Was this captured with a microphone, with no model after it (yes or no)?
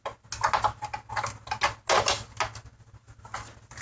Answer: yes